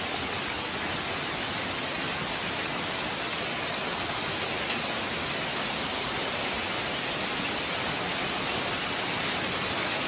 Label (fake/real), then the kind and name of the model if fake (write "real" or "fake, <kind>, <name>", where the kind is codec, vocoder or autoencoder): real